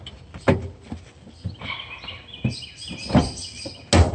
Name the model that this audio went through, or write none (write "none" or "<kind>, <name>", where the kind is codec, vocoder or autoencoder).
none